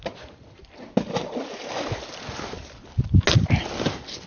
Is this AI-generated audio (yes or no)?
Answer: no